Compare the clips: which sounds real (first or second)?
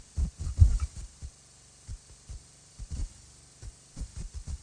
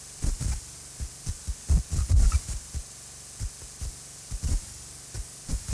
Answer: second